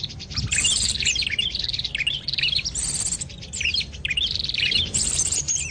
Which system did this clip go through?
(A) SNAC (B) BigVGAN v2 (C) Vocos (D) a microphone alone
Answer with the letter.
B